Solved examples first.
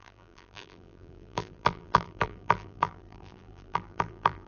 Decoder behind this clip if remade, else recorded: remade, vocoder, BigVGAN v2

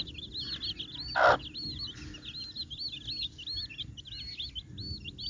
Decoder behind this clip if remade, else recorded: recorded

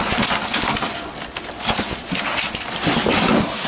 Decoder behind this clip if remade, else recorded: recorded